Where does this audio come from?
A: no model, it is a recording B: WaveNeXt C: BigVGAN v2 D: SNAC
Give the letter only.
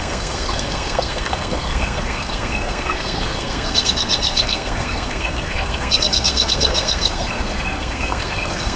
D